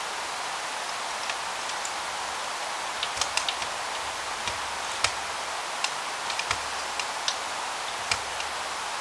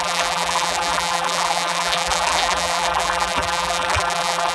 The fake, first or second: second